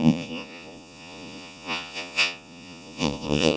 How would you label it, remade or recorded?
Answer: remade